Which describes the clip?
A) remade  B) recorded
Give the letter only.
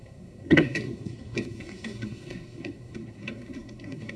A